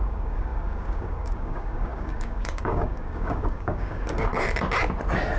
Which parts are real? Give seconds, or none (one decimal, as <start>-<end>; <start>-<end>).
4.3-5.4